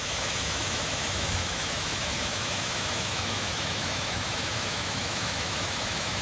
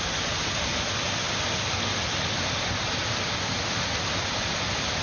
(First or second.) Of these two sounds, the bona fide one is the second